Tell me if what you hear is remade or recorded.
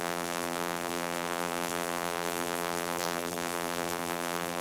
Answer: remade